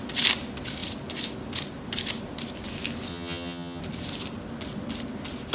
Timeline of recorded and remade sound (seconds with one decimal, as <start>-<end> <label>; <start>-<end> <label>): 0.0-3.1 recorded; 3.1-3.8 remade; 3.8-5.5 recorded